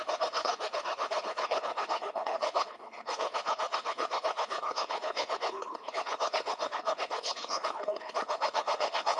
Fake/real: fake